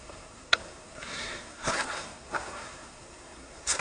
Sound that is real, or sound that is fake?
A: fake